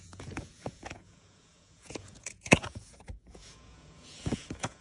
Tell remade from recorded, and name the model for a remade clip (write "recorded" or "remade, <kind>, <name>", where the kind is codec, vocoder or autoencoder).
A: remade, vocoder, Vocos